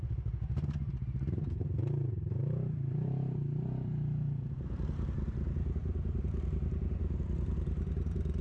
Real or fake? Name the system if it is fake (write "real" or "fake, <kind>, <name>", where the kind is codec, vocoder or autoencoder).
fake, vocoder, BigVGAN v2